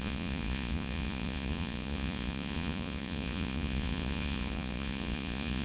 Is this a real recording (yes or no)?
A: no